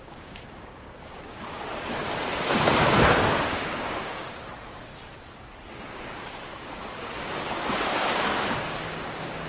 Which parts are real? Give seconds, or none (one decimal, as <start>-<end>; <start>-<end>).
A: 4.9-5.7